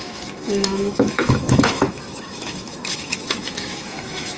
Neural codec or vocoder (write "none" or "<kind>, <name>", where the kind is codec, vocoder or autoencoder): autoencoder, DAC-VAE